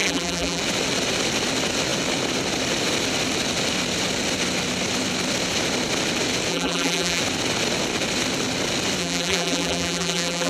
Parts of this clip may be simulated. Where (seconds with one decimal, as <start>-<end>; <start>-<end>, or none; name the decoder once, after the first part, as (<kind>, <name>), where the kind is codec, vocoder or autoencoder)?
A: 0.0-0.6 (vocoder, BigVGAN v2); 6.5-7.2; 9.0-10.5